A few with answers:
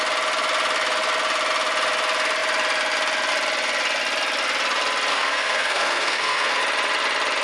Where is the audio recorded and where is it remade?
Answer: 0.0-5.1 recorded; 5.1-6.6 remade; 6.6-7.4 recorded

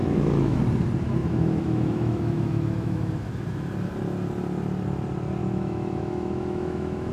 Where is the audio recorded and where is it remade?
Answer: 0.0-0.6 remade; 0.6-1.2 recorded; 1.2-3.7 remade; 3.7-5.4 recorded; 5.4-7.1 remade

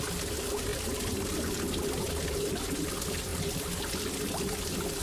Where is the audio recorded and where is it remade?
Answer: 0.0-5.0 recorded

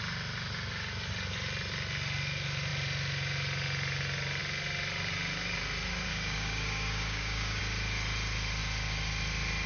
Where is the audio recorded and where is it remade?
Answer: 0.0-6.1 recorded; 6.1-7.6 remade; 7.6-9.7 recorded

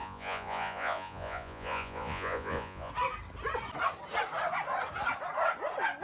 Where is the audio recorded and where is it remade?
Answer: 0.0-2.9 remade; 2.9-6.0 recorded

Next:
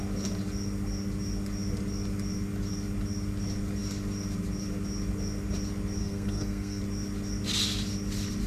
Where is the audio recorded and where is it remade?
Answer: 0.0-6.0 recorded; 6.0-6.8 remade; 6.8-8.5 recorded